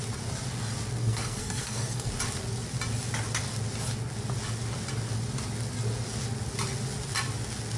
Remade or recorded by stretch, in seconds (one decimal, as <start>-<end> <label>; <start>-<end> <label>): 0.0-1.0 recorded; 1.0-2.1 remade; 2.1-7.8 recorded